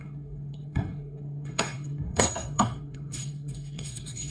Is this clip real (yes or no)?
no